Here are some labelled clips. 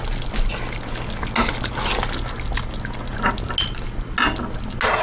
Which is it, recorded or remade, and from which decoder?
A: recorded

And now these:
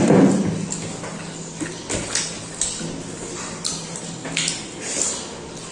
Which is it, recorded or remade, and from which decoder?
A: recorded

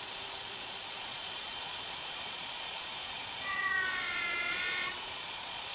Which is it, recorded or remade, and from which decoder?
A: remade, vocoder, Vocos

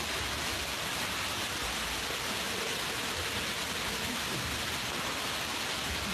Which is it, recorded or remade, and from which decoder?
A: recorded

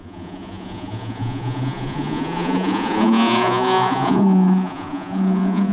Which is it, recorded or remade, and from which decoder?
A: remade, vocoder, Vocos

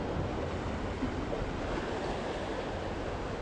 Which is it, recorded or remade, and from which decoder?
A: recorded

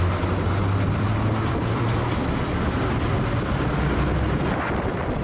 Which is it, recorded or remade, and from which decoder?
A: recorded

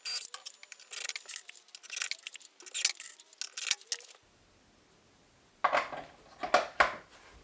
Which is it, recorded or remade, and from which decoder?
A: recorded